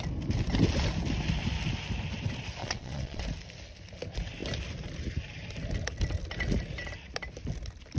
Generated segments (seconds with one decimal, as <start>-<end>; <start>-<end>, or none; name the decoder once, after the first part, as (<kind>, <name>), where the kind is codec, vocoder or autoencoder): 2.6-3.2 (vocoder, WaveNeXt)